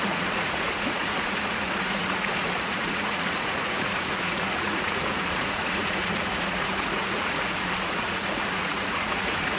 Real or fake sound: fake